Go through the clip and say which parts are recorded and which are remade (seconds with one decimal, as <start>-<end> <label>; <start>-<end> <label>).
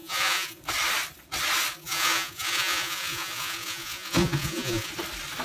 0.0-0.6 remade; 0.6-1.7 recorded; 1.7-4.9 remade; 4.9-5.4 recorded